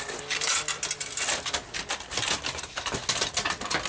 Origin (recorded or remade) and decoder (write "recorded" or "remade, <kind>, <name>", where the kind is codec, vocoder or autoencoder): recorded